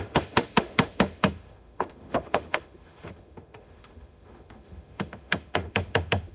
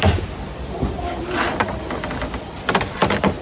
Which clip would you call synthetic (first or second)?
first